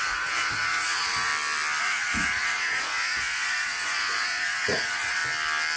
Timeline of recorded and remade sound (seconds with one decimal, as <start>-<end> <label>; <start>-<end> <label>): 0.0-1.3 remade; 1.3-1.8 recorded; 1.8-5.2 remade; 5.2-5.8 recorded